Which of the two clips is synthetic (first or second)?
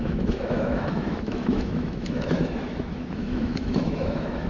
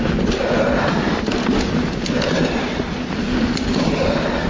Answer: first